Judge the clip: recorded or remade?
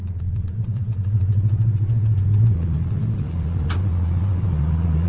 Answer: remade